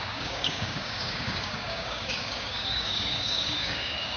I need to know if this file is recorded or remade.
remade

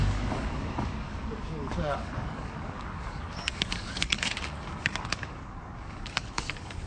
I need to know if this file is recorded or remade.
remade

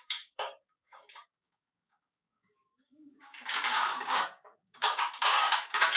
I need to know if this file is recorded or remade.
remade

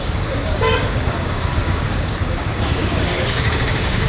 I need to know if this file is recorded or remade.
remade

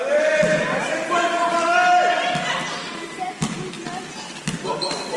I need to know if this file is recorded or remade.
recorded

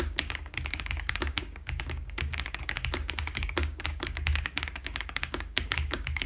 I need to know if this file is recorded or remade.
remade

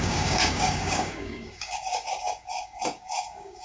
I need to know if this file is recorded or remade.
remade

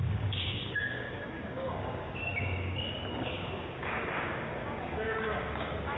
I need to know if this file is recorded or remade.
remade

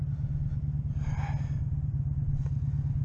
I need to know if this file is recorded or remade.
recorded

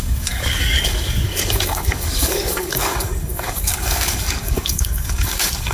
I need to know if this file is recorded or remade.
remade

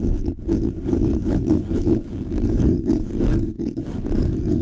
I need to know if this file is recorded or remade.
remade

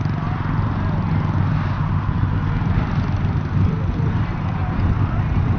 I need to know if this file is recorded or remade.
recorded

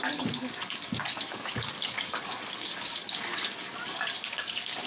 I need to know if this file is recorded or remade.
remade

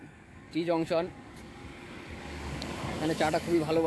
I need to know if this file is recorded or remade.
remade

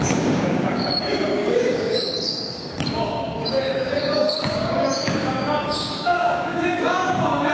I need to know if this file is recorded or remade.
remade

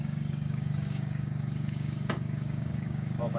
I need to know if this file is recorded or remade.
remade